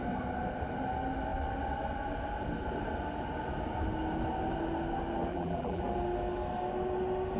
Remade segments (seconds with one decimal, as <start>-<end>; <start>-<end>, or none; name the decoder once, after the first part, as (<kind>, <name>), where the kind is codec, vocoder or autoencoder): 5.3-5.8 (vocoder, BigVGAN v2)